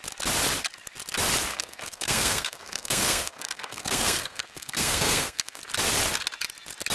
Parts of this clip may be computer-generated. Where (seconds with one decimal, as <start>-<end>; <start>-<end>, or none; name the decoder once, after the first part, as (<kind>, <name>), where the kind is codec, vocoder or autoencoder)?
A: 1.5-5.6 (codec, SNAC)